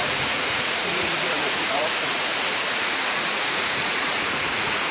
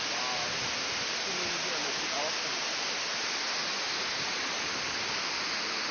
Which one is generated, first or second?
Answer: first